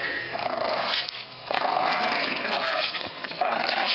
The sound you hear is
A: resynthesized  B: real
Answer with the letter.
A